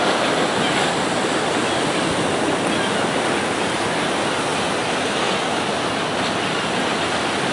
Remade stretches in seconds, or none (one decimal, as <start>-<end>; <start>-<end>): none